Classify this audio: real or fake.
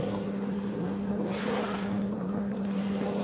fake